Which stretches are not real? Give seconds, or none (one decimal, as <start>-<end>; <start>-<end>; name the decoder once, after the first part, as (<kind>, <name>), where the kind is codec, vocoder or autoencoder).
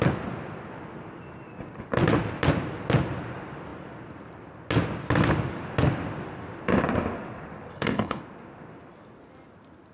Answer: 7.7-8.2 (codec, HILCodec)